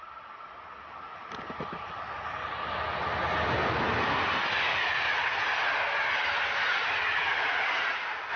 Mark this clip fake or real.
real